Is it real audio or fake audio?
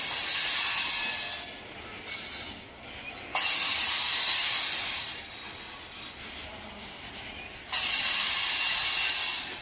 real